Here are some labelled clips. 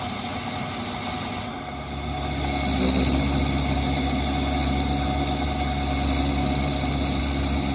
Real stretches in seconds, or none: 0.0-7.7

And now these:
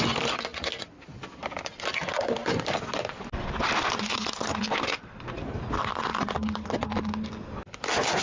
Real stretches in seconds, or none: 0.0-8.2

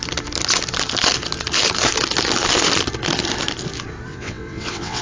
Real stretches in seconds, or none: 0.0-4.1

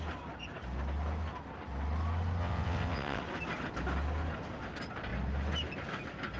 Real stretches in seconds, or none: 0.0-2.4; 3.2-6.4

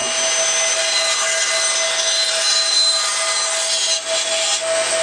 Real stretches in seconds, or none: 0.0-5.0

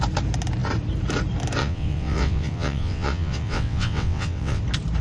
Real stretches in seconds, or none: 0.0-1.6; 4.6-5.0